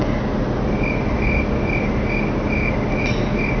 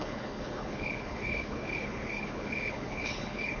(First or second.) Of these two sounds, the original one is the first